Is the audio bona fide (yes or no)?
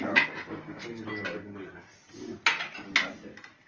yes